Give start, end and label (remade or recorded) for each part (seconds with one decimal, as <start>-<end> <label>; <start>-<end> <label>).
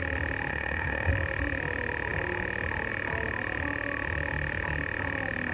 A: 0.0-0.5 recorded; 0.5-1.1 remade; 1.1-5.5 recorded